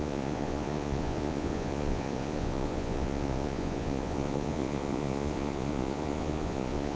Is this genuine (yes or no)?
no